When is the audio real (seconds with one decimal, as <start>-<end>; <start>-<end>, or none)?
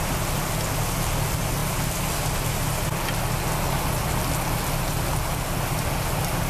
0.0-6.5